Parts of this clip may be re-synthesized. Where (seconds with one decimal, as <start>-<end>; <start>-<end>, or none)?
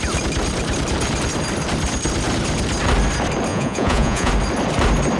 3.5-4.3